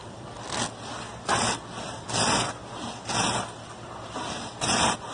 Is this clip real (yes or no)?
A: yes